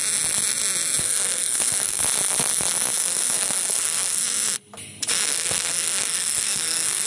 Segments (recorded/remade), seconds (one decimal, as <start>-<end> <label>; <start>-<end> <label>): 0.0-1.0 recorded; 1.0-2.0 remade; 2.0-3.0 recorded; 3.0-4.2 remade; 4.2-5.3 recorded; 5.3-7.1 remade